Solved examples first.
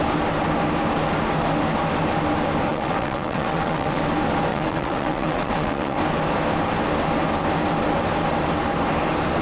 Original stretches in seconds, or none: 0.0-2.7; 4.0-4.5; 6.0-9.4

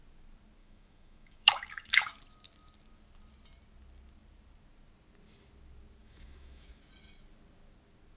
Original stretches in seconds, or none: 0.0-0.6; 2.2-6.0; 6.8-8.2

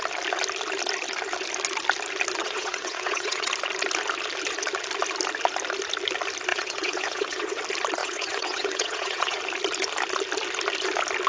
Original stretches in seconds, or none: 0.0-2.4; 3.5-6.5; 7.6-8.0; 9.4-11.3

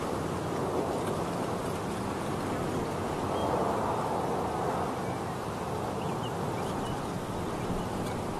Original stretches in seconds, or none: 0.0-8.4

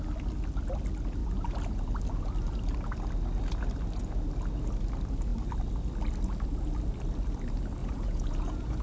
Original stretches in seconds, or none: 0.0-7.8